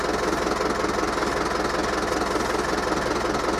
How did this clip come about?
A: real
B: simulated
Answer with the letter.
A